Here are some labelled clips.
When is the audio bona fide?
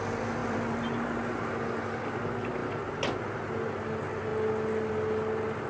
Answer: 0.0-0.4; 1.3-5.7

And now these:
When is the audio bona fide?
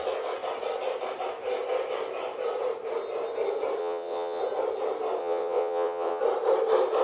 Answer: 0.0-3.8; 4.4-5.2; 6.2-7.0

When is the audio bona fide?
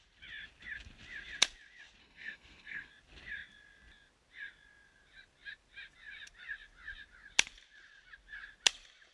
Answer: 0.0-2.0; 2.9-9.1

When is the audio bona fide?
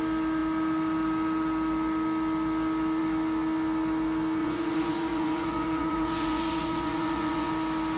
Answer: 0.0-4.4; 7.5-8.0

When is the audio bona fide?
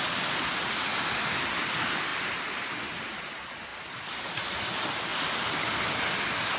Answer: 0.0-3.7; 4.2-5.1; 6.0-6.6